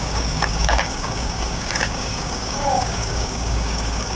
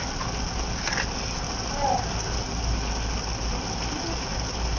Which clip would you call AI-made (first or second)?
first